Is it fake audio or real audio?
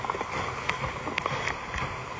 real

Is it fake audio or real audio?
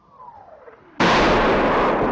real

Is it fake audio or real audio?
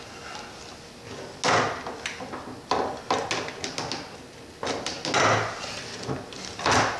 real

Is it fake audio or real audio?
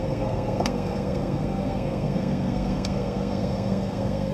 fake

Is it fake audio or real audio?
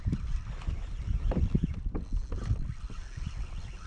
real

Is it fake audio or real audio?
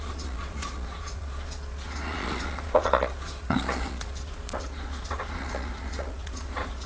fake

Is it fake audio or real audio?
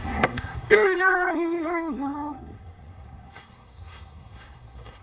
fake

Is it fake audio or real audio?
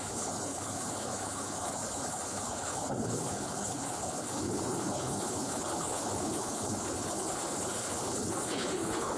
fake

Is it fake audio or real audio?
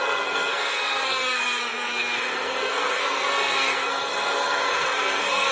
fake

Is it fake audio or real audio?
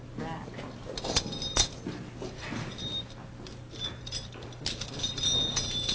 real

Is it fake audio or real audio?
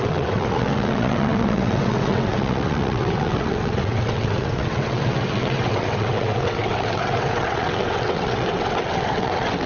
fake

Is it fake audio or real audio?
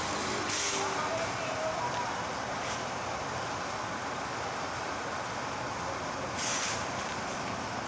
real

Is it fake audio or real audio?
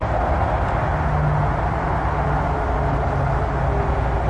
real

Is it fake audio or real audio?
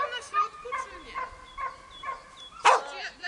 real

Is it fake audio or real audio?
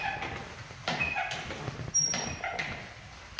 real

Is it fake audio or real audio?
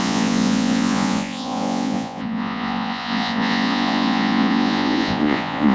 fake